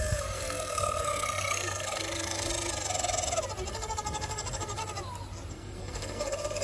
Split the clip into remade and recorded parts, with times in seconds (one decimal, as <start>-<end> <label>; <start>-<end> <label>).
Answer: 0.0-2.5 remade; 2.5-3.7 recorded; 3.7-4.8 remade; 4.8-5.5 recorded; 5.5-6.6 remade